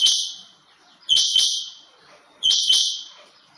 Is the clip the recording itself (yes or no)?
no